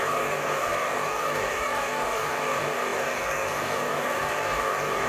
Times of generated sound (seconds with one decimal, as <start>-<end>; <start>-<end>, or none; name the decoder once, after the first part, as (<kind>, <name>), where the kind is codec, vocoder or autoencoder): 0.0-5.1 (codec, DAC)